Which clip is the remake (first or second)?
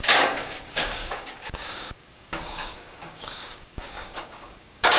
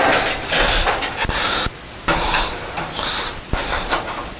first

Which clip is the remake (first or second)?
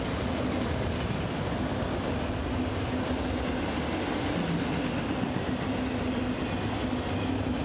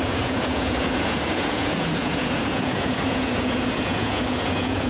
second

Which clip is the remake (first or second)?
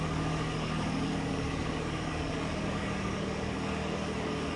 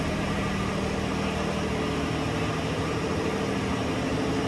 first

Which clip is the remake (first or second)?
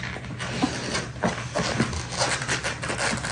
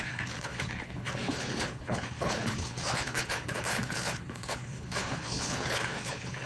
second